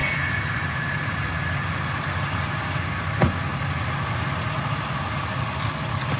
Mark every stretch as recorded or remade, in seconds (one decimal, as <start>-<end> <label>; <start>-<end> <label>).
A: 0.0-2.9 recorded; 2.9-3.5 remade; 3.5-4.8 recorded; 4.8-6.2 remade